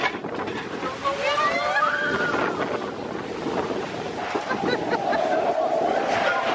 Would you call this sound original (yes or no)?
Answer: yes